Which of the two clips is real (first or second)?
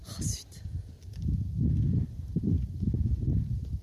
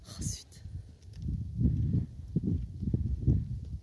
second